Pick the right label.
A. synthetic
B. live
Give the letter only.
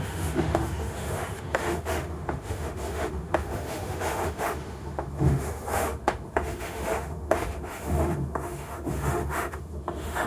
A